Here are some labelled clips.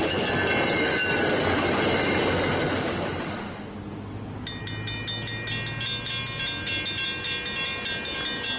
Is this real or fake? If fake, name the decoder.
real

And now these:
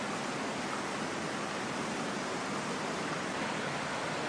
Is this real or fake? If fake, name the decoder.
real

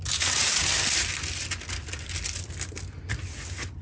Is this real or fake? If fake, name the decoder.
real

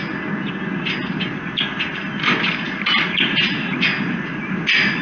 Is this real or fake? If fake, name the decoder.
real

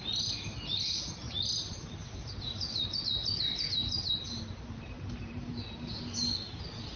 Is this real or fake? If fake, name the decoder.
real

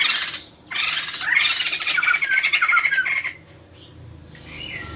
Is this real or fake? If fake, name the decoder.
real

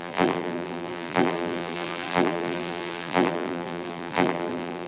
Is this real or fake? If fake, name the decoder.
fake, vocoder, BigVGAN v2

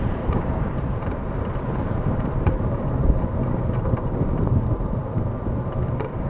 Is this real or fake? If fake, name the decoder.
fake, vocoder, BigVGAN v2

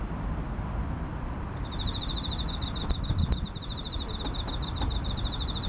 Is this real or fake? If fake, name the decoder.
fake, vocoder, BigVGAN v2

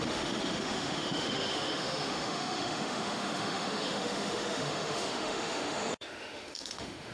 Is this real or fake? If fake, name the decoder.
fake, autoencoder, DAC-VAE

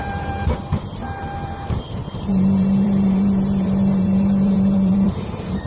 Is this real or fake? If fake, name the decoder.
fake, vocoder, BigVGAN v2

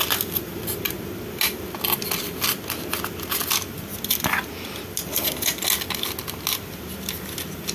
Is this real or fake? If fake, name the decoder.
real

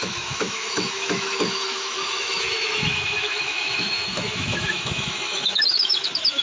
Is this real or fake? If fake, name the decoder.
fake, autoencoder, DAC-VAE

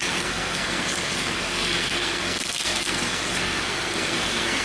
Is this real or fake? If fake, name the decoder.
fake, codec, SNAC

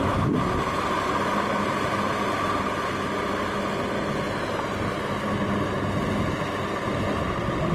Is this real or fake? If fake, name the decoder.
real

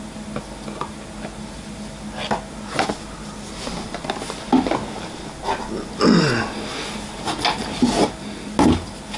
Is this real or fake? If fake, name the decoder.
real